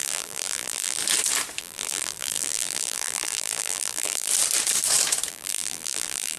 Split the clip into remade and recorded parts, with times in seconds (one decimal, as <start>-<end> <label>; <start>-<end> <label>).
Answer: 0.0-1.0 remade; 1.0-1.6 recorded; 1.6-4.3 remade; 4.3-5.3 recorded; 5.3-6.4 remade